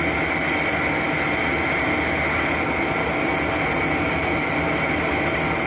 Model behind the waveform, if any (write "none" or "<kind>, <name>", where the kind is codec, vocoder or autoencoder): none